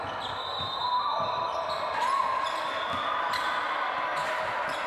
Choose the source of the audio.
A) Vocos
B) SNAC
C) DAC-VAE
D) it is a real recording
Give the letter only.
D